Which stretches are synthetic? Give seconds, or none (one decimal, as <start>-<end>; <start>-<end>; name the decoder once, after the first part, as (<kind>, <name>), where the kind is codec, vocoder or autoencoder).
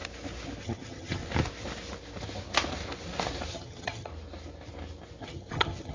0.6-1.2 (vocoder, HiFi-GAN); 3.5-4.1; 5.2-5.9